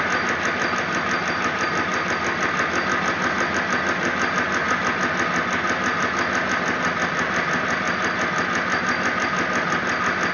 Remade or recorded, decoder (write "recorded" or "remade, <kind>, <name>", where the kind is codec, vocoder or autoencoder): recorded